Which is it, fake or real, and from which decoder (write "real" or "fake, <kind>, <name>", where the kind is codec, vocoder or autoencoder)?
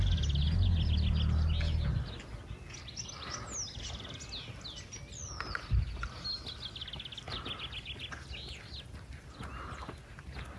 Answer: real